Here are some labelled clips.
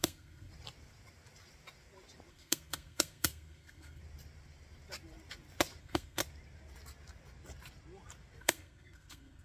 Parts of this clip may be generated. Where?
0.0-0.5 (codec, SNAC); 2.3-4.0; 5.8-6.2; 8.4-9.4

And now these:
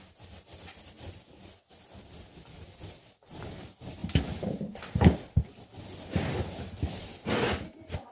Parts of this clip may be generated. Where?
none

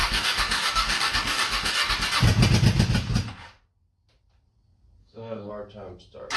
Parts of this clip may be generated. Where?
0.0-1.9 (codec, DAC); 5.0-5.5

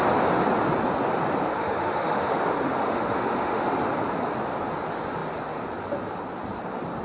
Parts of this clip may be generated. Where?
1.6-2.3 (autoencoder, DAC-VAE); 2.8-3.7

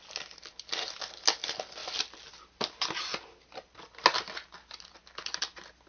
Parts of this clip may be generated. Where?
none